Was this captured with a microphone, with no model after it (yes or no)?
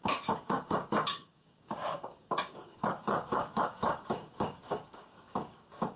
no